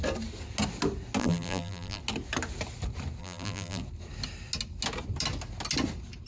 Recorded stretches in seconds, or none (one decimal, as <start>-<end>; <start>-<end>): 0.0-1.2; 2.0-3.2; 3.8-6.3